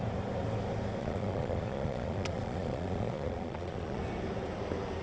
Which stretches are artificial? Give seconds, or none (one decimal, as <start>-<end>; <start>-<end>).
1.0-4.0